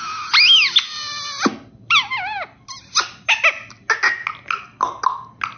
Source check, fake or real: real